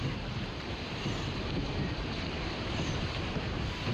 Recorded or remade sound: remade